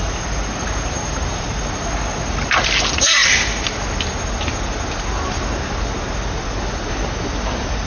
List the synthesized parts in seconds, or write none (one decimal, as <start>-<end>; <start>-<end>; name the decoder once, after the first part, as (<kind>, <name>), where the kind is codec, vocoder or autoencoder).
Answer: none